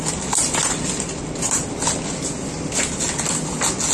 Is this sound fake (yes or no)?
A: no